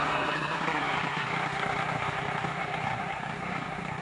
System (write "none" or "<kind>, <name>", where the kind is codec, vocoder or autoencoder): codec, SNAC